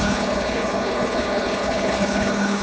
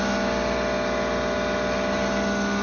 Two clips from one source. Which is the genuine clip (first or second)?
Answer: second